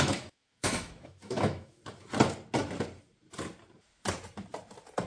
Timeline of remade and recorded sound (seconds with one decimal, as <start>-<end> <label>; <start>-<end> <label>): 0.0-1.8 remade; 1.8-5.1 recorded